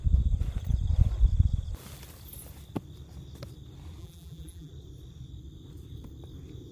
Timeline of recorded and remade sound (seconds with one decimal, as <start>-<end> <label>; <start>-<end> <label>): 0.0-4.0 recorded; 4.0-4.7 remade; 4.7-6.7 recorded